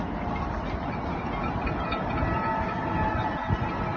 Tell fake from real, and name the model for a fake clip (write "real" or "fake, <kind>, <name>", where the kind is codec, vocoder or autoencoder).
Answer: real